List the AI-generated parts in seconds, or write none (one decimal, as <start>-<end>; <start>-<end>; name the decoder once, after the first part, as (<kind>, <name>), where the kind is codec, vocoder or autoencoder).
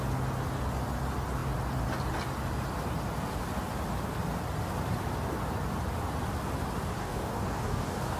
7.0-8.2 (codec, DAC)